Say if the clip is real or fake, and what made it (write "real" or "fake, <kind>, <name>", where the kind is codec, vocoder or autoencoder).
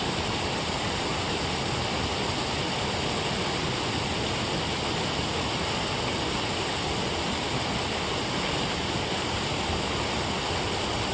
real